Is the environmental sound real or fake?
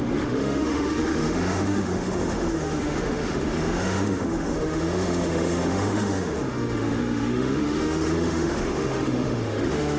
fake